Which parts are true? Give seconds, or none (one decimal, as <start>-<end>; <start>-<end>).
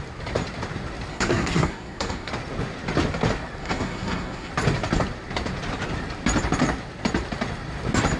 0.0-1.1; 2.3-3.6; 4.5-8.2